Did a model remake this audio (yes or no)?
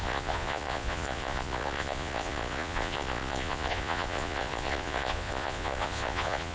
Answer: yes